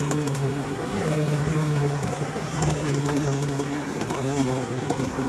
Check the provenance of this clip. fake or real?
fake